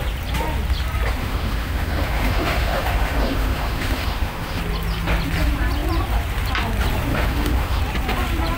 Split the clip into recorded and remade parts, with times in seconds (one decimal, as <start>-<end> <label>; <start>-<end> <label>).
0.0-1.2 recorded; 1.2-4.6 remade; 4.6-7.1 recorded; 7.1-7.8 remade; 7.8-8.6 recorded